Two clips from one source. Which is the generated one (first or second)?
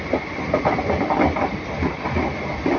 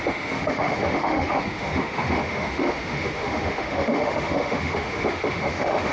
second